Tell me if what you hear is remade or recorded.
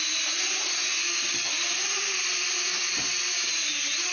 recorded